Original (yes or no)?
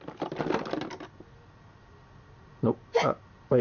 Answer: yes